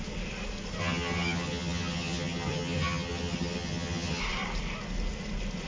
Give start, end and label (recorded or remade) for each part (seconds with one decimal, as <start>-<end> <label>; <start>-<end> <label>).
0.0-0.8 recorded; 0.8-4.2 remade; 4.2-5.7 recorded